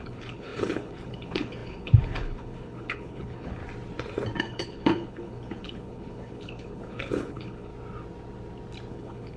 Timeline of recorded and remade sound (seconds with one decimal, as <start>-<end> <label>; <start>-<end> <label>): 0.0-3.6 remade; 3.6-4.4 recorded; 4.4-7.7 remade; 7.7-8.9 recorded; 8.9-9.4 remade